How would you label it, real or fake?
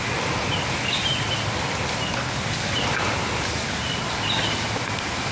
real